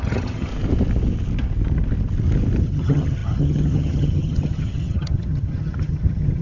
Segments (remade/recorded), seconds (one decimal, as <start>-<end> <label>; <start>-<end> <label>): 0.0-0.5 remade; 0.5-2.6 recorded; 2.6-6.4 remade